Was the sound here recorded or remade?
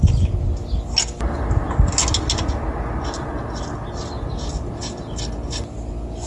recorded